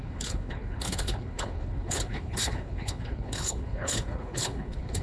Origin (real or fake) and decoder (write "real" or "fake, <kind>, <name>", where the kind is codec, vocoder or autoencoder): fake, codec, HILCodec